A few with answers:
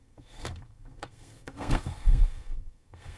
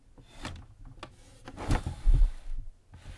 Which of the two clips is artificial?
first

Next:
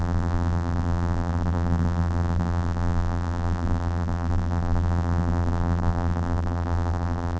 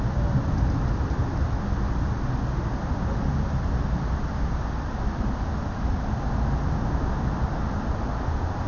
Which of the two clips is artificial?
first